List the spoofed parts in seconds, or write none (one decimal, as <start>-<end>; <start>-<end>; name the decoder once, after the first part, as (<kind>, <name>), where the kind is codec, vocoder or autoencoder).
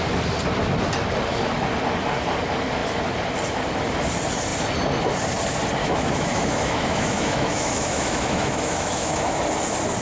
5.8-9.4 (autoencoder, DAC-VAE)